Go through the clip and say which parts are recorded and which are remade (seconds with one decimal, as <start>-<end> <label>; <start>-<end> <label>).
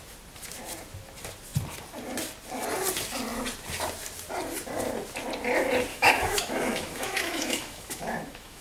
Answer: 0.0-5.9 recorded; 5.9-8.6 remade